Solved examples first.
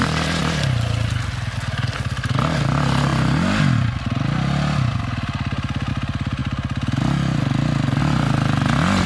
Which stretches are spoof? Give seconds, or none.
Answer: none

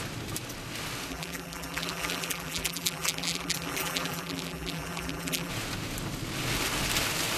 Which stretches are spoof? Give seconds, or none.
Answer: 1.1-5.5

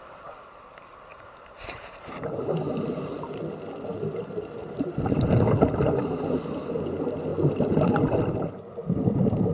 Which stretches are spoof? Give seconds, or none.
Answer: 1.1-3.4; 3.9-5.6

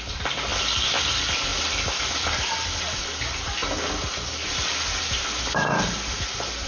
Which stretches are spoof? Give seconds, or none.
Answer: 0.0-0.5; 1.0-1.5; 2.0-3.6; 5.0-6.7

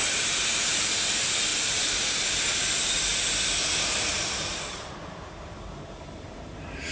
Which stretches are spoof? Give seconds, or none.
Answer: 0.0-0.9; 1.5-2.9; 4.1-6.5

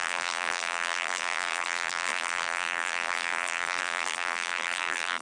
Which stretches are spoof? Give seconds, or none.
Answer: 0.0-5.2

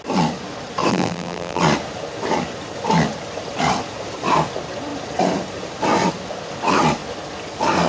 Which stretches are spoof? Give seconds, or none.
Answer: 0.9-1.6

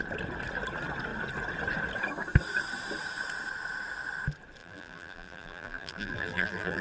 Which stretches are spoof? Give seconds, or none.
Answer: 4.6-6.8